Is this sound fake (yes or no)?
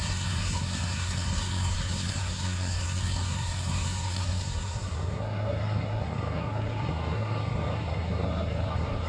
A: yes